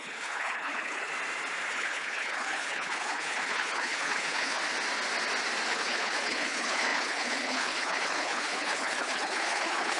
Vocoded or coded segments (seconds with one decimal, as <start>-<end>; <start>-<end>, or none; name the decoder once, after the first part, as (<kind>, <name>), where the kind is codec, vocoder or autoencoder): 0.0-1.1 (codec, HILCodec); 1.7-4.6; 5.7-10.0